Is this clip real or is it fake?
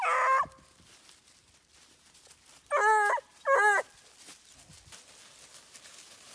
real